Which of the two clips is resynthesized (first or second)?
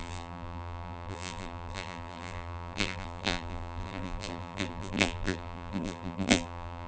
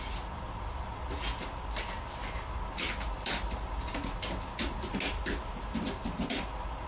first